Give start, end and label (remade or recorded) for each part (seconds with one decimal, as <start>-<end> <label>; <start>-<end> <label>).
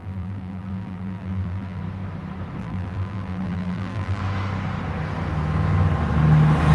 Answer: 0.0-1.8 remade; 1.8-2.6 recorded; 2.6-4.2 remade; 4.2-6.7 recorded